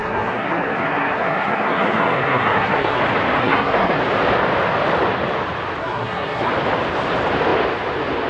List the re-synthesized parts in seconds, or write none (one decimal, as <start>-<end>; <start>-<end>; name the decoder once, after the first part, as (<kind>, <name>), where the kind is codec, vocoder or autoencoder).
0.0-3.0 (codec, SNAC); 3.4-4.0; 5.8-6.5